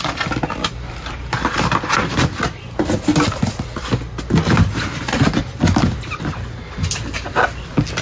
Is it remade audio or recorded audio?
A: recorded